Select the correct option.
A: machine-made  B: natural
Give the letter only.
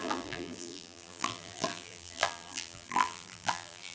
A